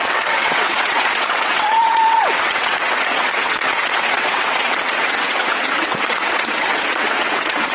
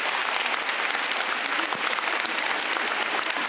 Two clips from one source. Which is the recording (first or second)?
second